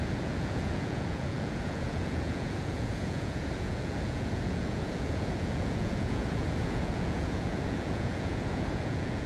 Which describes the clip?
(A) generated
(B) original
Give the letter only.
A